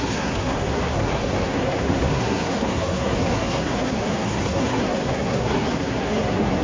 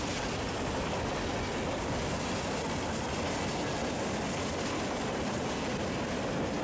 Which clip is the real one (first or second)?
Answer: second